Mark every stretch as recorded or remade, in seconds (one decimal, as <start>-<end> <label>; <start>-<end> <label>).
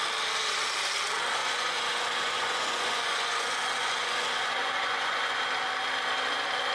0.0-1.4 recorded; 1.4-5.4 remade; 5.4-6.7 recorded